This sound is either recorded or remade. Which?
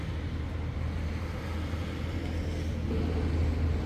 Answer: recorded